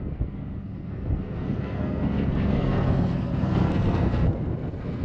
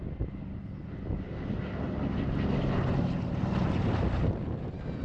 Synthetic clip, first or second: first